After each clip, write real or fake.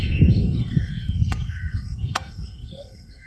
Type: fake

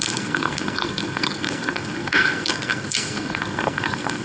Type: fake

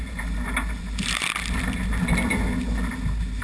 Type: real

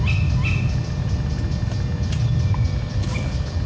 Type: real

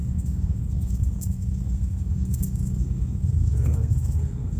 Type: fake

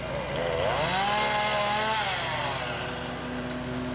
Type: real